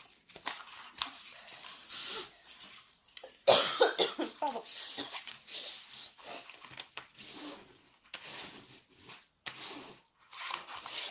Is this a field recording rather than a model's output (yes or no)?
yes